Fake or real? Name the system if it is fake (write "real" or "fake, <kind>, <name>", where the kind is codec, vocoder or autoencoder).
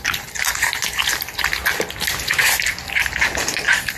real